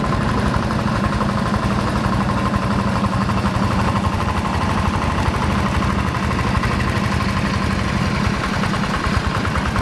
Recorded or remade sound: recorded